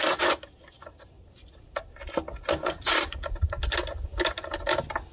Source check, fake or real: real